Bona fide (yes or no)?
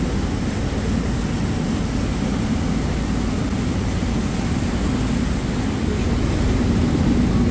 yes